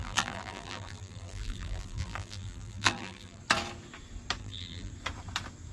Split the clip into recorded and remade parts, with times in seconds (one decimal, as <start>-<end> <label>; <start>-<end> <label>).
0.0-3.4 remade; 3.4-4.4 recorded; 4.4-4.9 remade; 4.9-5.7 recorded